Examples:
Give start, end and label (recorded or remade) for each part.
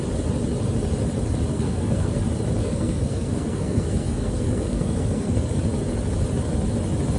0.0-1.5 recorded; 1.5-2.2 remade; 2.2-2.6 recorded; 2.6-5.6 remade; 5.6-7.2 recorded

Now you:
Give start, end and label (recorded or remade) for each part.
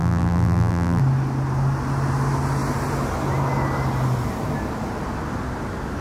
0.0-1.0 remade; 1.0-6.0 recorded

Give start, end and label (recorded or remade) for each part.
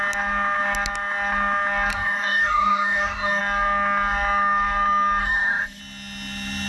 0.0-1.9 recorded; 1.9-3.4 remade; 3.4-5.2 recorded; 5.2-5.8 remade; 5.8-6.7 recorded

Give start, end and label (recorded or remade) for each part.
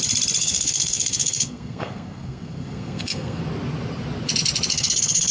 0.0-0.4 recorded; 0.4-3.4 remade; 3.4-4.7 recorded; 4.7-5.3 remade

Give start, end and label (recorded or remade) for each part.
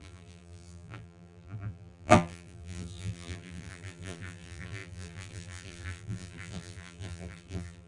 0.0-7.9 remade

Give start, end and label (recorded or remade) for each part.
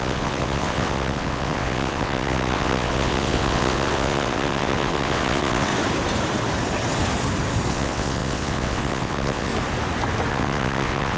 0.0-5.7 remade; 5.7-7.7 recorded; 7.7-9.5 remade; 9.5-10.3 recorded; 10.3-11.2 remade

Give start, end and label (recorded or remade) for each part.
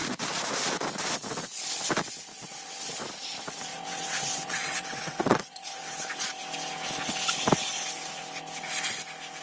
0.0-2.3 recorded; 2.3-3.0 remade; 3.0-3.7 recorded; 3.7-6.1 remade; 6.1-9.4 recorded